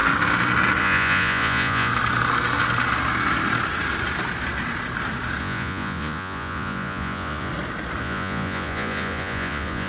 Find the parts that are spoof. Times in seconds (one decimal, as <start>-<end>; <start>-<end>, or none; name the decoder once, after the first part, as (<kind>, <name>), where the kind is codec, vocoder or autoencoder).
0.8-1.9 (vocoder, Vocos); 5.4-7.5; 8.0-9.9